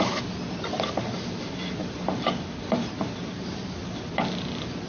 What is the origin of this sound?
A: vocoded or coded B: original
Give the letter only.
B